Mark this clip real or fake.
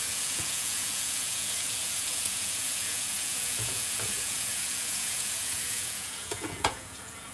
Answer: fake